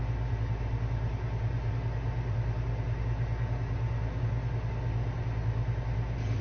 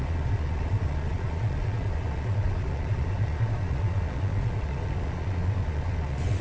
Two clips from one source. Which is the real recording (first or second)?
first